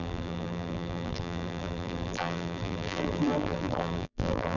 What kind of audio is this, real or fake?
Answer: fake